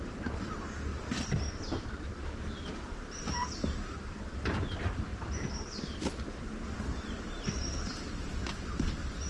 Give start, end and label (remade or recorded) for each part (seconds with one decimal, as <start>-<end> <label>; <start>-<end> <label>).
0.0-9.3 recorded